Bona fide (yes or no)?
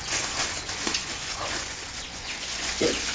no